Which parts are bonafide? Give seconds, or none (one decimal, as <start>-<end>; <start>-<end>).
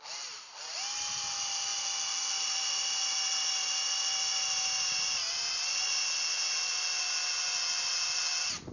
0.0-8.7